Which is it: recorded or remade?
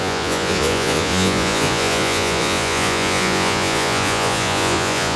remade